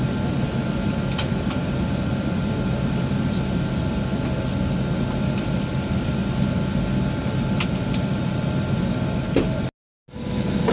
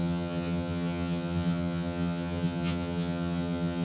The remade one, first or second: second